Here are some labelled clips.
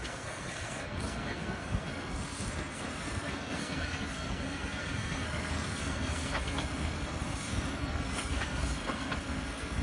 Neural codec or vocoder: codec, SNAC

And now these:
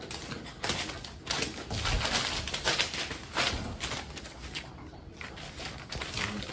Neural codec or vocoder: none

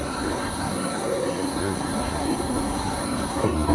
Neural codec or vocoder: codec, SNAC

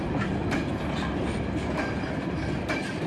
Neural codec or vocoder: none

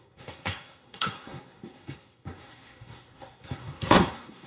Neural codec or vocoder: codec, SNAC